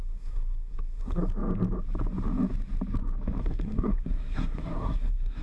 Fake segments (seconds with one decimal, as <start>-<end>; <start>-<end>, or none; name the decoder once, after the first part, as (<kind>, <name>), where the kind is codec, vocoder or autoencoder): 0.0-1.2 (codec, SNAC); 3.4-5.4